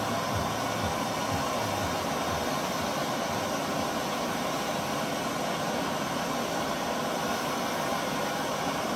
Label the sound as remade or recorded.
recorded